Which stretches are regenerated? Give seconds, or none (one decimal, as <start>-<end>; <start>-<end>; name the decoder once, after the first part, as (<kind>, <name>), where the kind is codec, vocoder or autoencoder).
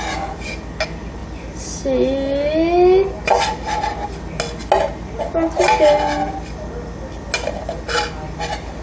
none